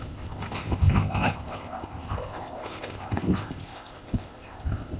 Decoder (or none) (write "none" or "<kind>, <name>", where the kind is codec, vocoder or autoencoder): codec, ZipCodec